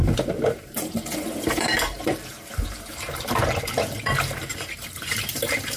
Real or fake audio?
fake